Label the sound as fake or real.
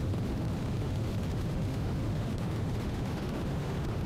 fake